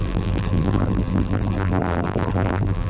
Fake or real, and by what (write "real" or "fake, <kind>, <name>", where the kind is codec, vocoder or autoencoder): fake, vocoder, BigVGAN v2